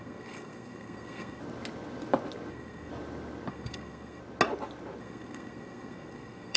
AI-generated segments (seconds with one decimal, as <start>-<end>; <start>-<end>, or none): 0.0-1.4; 2.5-2.9; 3.5-4.2; 5.0-6.6